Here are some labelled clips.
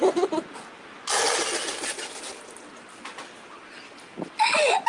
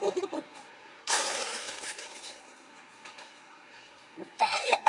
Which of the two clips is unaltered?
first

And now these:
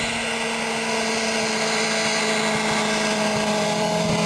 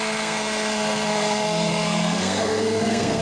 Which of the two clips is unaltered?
first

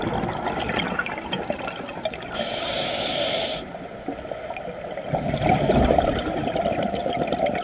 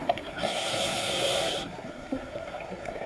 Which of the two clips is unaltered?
first